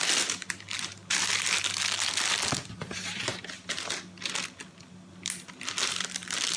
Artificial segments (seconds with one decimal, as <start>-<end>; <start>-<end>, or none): none